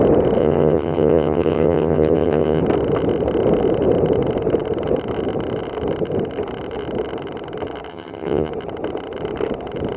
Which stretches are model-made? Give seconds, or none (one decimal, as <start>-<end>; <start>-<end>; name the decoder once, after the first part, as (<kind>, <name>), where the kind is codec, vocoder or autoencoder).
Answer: 0.4-2.6 (vocoder, HiFi-GAN); 7.9-8.5